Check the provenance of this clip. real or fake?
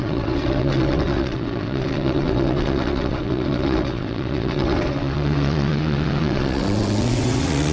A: fake